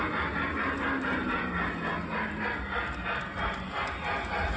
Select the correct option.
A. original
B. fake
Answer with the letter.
A